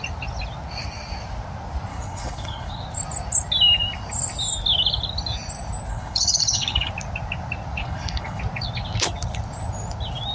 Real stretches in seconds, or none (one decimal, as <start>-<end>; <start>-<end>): 0.0-1.9; 2.8-5.9; 6.9-7.8; 8.4-10.3